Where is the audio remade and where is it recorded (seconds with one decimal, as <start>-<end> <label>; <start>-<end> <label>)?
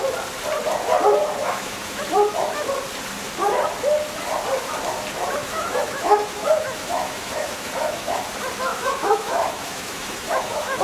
0.0-1.4 recorded; 1.4-2.0 remade; 2.0-5.4 recorded; 5.4-8.2 remade; 8.2-8.7 recorded; 8.7-10.8 remade